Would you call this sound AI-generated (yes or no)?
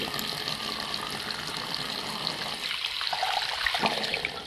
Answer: no